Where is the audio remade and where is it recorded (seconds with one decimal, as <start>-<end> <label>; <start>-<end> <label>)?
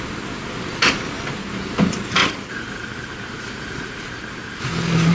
0.0-2.2 recorded; 2.2-4.6 remade; 4.6-5.1 recorded